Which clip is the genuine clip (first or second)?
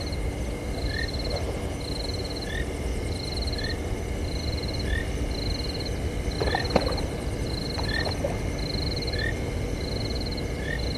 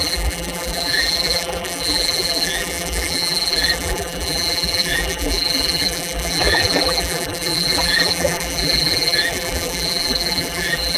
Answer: first